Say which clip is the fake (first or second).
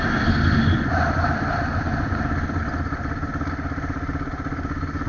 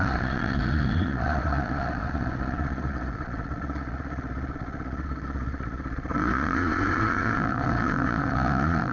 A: second